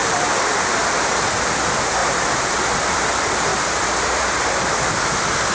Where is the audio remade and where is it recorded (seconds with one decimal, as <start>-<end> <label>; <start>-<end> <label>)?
0.0-2.0 recorded; 2.0-2.7 remade; 2.7-3.5 recorded; 3.5-5.5 remade